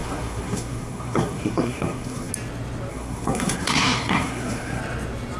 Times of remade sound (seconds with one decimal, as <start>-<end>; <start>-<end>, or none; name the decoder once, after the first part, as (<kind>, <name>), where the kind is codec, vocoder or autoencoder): 0.0-2.3 (codec, SNAC); 2.9-4.8